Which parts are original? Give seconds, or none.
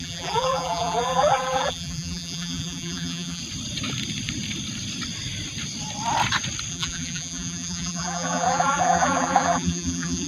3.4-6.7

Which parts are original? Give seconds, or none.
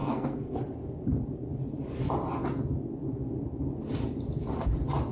0.6-5.1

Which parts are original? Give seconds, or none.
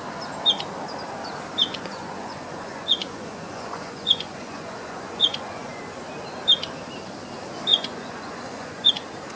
0.0-1.7; 5.8-7.7; 8.9-9.4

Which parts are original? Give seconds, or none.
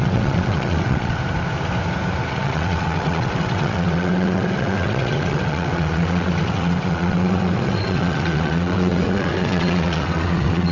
1.2-2.3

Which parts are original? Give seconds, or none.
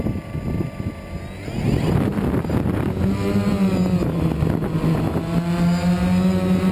0.0-6.7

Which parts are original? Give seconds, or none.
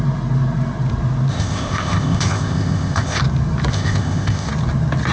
0.0-1.3; 3.2-3.7; 4.5-5.1